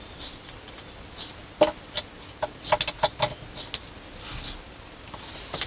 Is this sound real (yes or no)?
yes